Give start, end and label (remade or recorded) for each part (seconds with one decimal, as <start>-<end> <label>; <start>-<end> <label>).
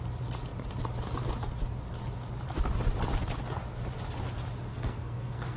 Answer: 0.0-4.7 recorded; 4.7-5.6 remade